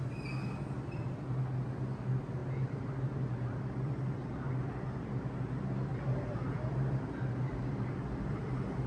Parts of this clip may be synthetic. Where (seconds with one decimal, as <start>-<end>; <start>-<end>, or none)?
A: 2.4-5.1; 5.9-8.9